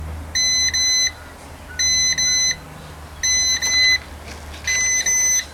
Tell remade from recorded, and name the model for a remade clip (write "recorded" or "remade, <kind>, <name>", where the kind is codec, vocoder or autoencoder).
recorded